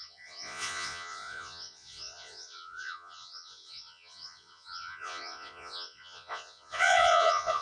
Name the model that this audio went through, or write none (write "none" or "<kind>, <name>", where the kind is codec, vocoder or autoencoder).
vocoder, Vocos